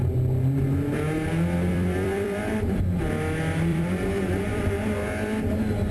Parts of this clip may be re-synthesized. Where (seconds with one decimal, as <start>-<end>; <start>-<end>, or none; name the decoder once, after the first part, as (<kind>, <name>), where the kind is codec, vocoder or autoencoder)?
1.7-2.8 (vocoder, BigVGAN v2); 3.7-4.7